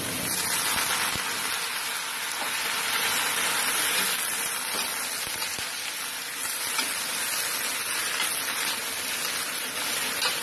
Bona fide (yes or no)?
yes